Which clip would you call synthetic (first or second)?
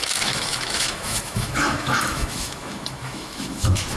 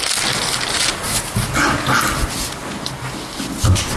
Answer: first